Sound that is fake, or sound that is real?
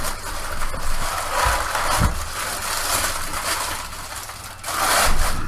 real